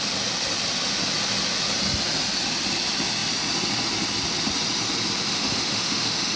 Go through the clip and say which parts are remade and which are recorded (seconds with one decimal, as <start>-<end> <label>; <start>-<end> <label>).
0.0-5.3 recorded; 5.3-6.4 remade